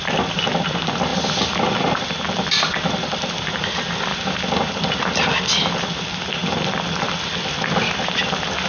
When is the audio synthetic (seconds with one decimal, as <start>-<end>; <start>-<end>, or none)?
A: 1.1-3.3; 4.1-5.7